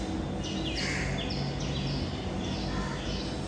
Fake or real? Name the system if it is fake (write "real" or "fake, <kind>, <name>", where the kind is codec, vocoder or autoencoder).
real